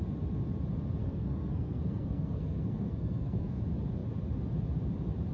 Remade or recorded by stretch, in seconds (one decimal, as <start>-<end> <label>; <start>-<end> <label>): 0.0-1.0 recorded; 1.0-3.6 remade; 3.6-5.3 recorded